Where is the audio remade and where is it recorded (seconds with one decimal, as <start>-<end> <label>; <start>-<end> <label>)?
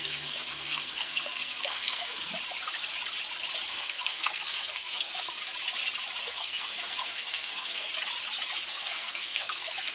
0.0-2.3 remade; 2.3-3.7 recorded; 3.7-5.4 remade; 5.4-6.2 recorded; 6.2-7.9 remade; 7.9-8.7 recorded; 8.7-9.9 remade